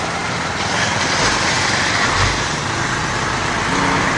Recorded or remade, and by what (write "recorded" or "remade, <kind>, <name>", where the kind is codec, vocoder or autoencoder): recorded